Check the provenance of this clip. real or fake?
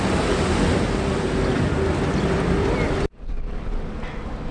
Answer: fake